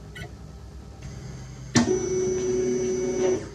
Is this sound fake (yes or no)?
no